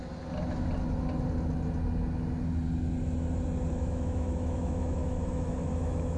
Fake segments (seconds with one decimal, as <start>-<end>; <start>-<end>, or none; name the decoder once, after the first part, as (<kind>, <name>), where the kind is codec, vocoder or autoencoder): 3.7-6.2 (autoencoder, DAC-VAE)